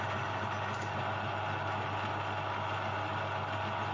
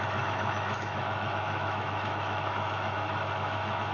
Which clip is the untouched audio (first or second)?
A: first